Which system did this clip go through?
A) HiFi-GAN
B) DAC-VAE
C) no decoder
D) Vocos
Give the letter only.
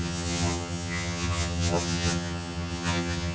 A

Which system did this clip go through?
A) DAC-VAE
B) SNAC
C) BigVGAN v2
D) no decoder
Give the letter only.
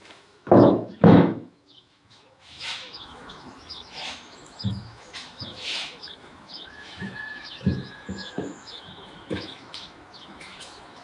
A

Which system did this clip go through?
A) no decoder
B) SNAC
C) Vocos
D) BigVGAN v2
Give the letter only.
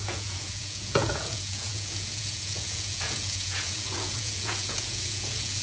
C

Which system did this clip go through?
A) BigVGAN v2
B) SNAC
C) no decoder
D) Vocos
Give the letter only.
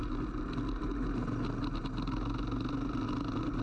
C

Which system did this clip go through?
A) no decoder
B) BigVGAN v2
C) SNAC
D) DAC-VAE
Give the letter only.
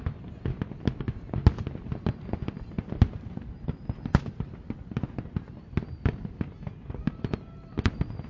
A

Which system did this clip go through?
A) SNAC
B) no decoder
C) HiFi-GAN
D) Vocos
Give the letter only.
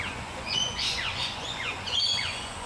D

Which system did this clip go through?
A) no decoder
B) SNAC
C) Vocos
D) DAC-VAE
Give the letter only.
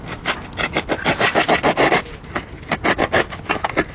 A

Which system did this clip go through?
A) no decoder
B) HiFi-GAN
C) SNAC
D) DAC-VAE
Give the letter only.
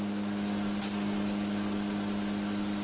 A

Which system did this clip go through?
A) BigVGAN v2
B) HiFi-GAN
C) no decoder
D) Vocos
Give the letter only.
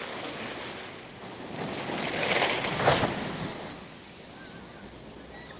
C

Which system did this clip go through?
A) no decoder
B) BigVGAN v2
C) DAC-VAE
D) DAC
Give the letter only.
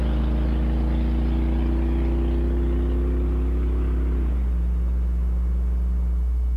A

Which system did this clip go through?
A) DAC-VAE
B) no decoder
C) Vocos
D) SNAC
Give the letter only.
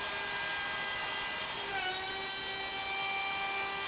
B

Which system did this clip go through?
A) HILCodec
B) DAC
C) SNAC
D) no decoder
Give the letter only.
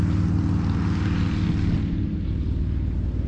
D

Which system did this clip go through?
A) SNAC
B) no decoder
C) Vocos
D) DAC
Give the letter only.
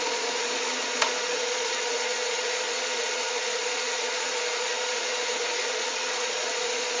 C